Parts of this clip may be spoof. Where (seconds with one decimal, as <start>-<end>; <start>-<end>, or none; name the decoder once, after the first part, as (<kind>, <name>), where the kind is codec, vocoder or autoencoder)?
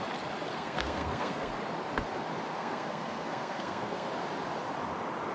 0.5-1.5 (codec, SNAC); 2.5-4.1